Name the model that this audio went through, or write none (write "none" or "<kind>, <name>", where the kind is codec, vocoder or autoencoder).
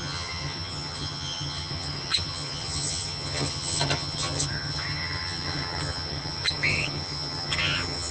vocoder, HiFi-GAN